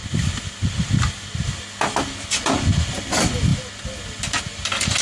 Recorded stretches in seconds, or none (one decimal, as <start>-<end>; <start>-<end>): 0.0-5.0